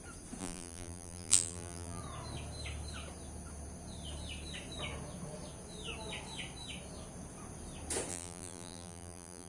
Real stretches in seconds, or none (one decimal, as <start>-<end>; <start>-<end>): 0.0-0.4; 2.0-8.1